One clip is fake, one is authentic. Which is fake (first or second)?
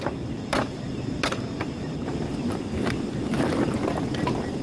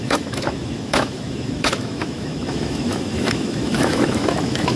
second